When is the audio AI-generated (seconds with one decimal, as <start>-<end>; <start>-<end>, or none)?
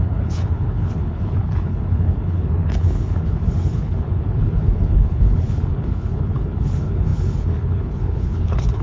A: 0.0-8.8